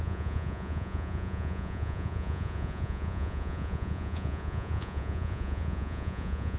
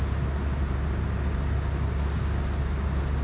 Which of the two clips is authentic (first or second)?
second